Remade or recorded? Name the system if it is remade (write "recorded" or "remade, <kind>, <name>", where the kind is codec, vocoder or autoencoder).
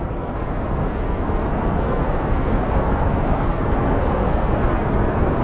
remade, codec, SNAC